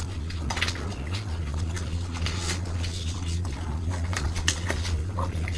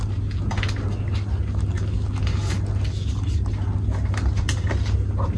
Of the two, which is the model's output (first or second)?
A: first